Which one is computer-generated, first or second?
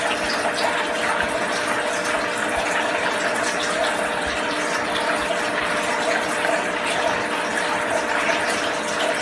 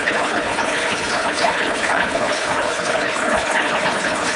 second